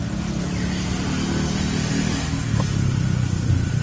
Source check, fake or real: real